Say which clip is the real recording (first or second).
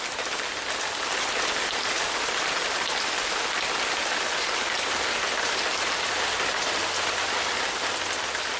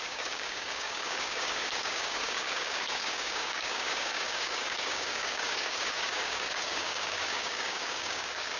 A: first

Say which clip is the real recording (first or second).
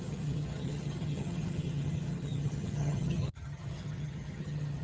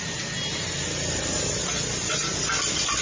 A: second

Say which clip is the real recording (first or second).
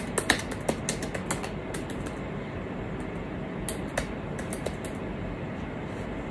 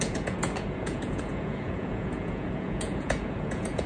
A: first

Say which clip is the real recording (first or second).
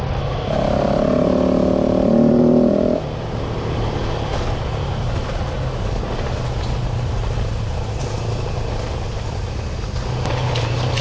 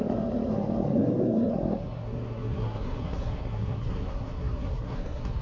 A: first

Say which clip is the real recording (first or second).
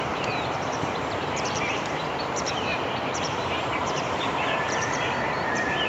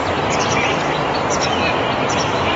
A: second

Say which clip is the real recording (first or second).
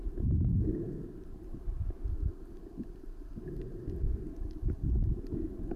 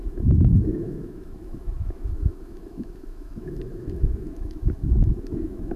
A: first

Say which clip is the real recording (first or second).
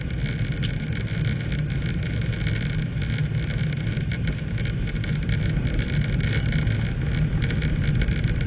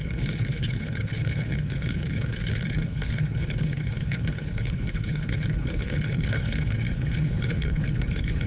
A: first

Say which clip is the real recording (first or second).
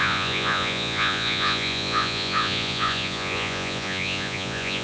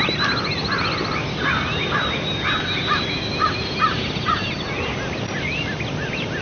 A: second